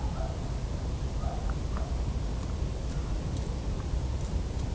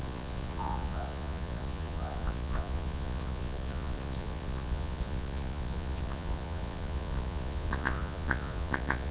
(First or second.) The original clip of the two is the first